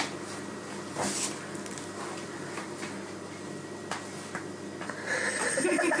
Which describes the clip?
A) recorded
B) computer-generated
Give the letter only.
A